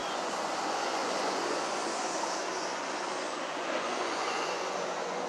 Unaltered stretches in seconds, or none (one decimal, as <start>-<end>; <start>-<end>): none